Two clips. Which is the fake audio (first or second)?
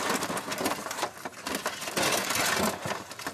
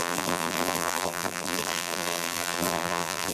second